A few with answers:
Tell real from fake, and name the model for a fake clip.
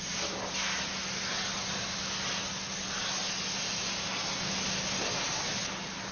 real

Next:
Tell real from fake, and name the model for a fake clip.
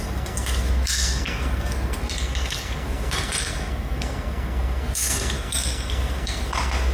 fake, codec, SNAC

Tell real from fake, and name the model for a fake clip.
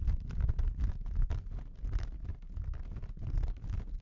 real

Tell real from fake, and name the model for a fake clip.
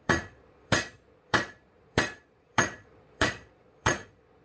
fake, vocoder, Vocos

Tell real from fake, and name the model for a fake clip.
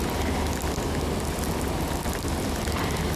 real